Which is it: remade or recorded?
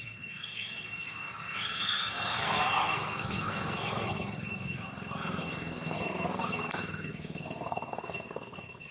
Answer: remade